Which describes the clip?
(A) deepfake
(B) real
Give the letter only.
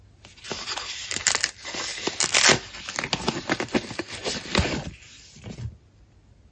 B